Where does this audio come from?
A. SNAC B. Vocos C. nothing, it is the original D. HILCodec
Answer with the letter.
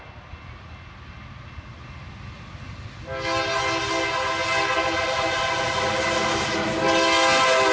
C